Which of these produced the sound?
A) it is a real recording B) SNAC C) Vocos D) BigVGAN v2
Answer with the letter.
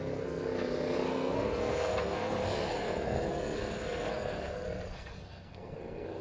B